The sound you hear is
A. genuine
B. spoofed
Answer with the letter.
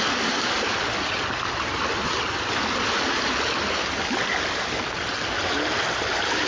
A